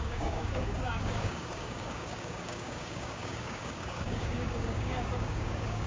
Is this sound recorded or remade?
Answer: remade